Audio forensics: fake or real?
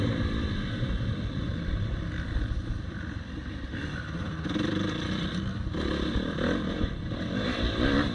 fake